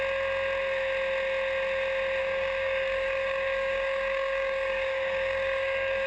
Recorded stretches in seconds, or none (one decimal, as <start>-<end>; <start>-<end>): 0.0-2.2